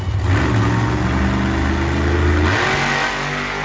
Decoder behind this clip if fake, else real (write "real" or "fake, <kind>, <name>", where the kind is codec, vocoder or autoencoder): real